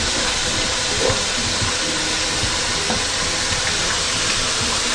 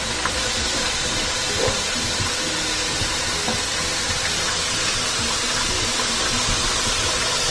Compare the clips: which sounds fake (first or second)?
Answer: first